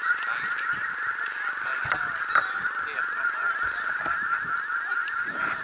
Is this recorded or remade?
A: recorded